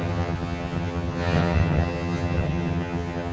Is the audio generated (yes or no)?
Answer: yes